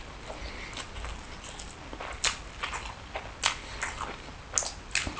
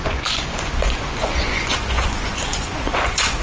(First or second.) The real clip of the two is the first